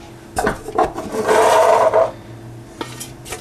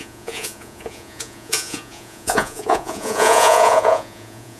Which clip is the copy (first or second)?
second